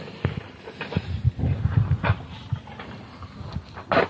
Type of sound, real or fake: real